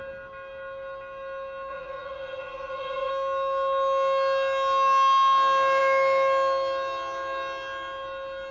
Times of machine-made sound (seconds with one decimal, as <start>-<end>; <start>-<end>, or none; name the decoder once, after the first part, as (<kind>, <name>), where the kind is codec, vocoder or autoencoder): 1.7-3.1 (vocoder, Vocos)